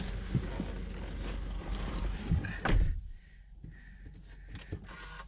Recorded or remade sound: recorded